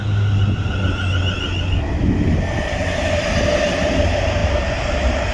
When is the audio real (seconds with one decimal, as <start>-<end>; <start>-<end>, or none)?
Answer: 0.0-5.3